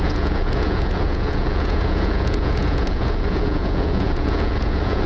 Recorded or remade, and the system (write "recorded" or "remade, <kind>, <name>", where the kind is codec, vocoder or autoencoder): remade, vocoder, Vocos